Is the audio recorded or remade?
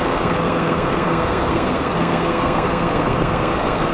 remade